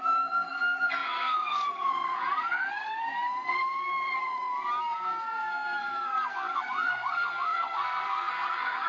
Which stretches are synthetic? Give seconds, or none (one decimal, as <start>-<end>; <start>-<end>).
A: 0.0-3.9; 4.8-8.9

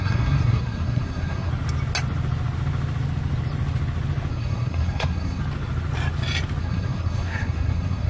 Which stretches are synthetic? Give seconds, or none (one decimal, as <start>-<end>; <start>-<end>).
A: 0.0-1.5; 4.3-5.4; 6.6-8.1

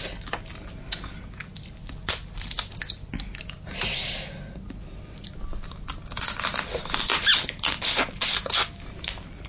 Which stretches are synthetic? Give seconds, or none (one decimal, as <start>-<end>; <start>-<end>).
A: none